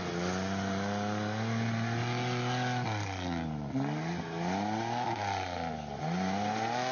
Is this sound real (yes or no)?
yes